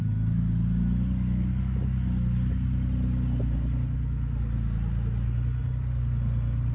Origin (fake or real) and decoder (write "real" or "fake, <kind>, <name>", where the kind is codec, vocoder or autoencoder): real